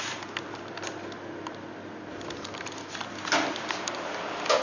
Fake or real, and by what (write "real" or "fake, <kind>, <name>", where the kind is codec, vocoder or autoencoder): real